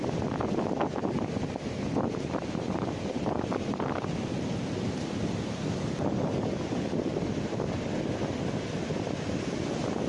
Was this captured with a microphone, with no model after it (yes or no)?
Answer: yes